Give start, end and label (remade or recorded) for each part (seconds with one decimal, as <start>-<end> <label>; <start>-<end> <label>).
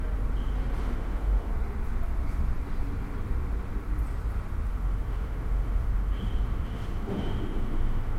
0.0-0.8 recorded; 0.8-1.5 remade; 1.5-4.7 recorded; 4.7-8.2 remade